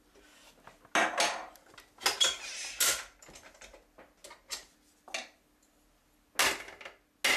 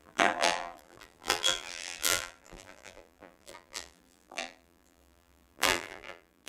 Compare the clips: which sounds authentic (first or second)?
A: first